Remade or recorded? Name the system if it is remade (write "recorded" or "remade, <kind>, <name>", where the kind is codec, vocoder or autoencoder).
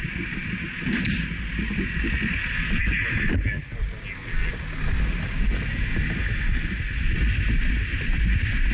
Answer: recorded